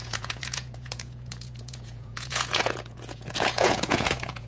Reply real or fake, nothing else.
fake